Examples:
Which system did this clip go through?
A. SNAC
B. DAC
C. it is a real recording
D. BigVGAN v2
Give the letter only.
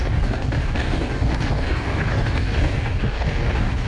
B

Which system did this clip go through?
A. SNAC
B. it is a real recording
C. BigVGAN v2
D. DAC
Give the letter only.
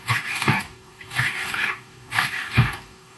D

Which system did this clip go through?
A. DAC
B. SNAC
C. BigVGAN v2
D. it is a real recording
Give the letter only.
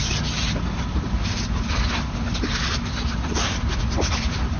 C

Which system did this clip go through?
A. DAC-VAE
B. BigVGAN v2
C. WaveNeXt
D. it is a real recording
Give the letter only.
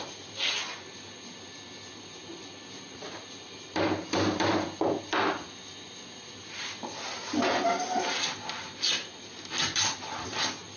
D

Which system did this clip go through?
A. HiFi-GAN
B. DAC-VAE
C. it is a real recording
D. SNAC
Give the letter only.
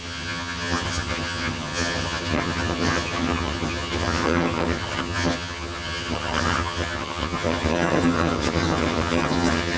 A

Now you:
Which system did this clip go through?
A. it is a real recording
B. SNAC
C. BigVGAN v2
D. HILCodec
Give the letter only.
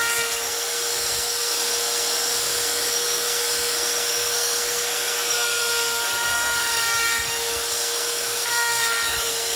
B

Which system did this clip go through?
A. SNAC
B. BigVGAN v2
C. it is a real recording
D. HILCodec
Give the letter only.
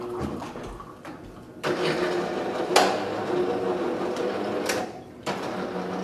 C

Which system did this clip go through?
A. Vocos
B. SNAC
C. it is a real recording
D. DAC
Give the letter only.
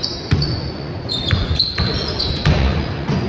A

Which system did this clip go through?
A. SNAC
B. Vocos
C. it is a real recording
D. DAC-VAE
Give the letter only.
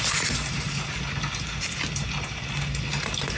C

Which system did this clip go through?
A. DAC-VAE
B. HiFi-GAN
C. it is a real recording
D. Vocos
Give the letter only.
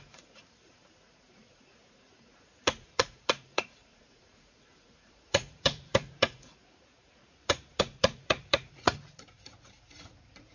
D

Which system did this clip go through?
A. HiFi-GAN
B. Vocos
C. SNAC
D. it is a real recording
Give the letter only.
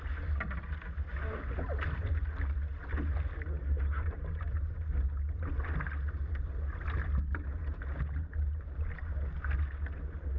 D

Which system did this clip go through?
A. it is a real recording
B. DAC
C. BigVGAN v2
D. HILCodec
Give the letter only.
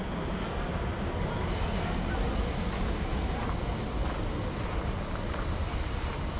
A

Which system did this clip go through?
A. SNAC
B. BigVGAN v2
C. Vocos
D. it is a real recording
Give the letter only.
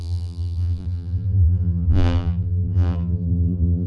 B